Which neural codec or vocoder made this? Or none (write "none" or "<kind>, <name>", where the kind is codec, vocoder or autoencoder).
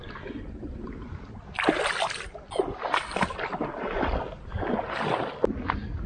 none